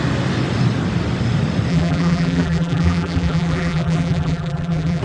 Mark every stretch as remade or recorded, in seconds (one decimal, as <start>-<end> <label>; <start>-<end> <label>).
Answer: 0.0-1.7 recorded; 1.7-5.0 remade